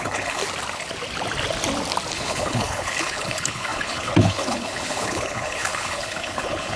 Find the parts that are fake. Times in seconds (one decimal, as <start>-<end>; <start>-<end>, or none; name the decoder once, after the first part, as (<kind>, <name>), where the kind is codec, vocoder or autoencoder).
0.0-0.4 (codec, HILCodec); 2.1-6.8